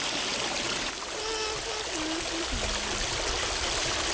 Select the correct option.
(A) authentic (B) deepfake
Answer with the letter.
A